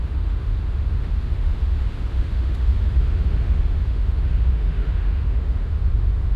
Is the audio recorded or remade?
remade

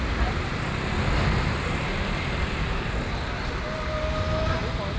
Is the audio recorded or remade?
recorded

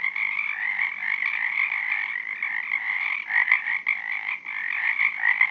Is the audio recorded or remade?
recorded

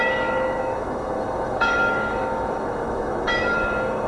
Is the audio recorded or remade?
remade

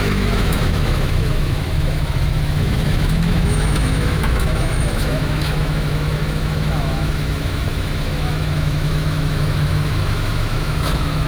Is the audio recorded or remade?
remade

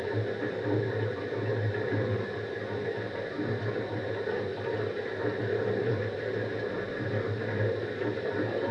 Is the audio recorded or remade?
recorded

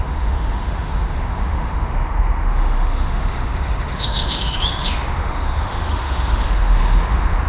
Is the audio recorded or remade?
remade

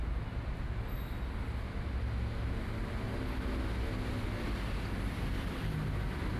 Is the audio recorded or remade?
recorded